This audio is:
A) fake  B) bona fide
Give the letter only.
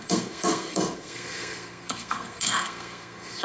A